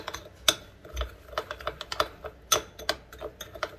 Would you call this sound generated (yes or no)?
no